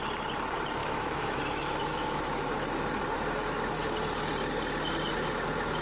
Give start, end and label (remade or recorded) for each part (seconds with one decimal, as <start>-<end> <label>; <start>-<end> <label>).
0.0-0.8 recorded; 0.8-2.5 remade; 2.5-5.8 recorded